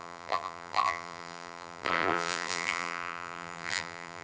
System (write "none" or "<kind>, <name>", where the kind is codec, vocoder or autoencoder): vocoder, BigVGAN v2